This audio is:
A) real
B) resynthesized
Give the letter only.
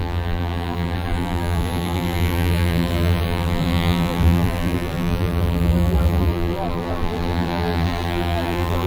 B